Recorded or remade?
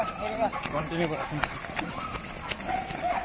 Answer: recorded